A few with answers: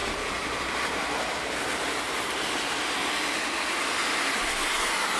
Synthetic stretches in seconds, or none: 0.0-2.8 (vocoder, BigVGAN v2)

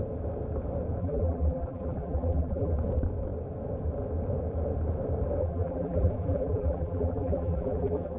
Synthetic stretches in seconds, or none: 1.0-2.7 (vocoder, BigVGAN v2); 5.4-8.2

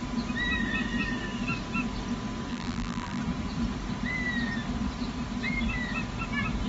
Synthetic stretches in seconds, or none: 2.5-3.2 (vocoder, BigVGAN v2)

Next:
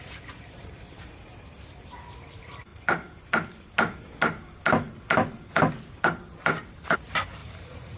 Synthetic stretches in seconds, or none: 0.0-2.7 (vocoder, BigVGAN v2); 6.7-8.0